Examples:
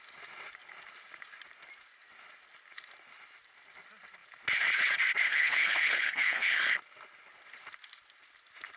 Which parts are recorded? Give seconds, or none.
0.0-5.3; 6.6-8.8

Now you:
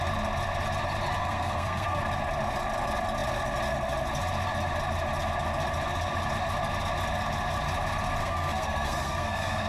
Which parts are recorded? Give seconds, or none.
0.0-1.2; 2.0-8.2